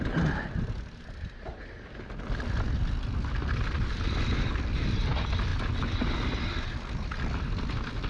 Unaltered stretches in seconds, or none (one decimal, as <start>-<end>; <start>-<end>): 0.0-8.1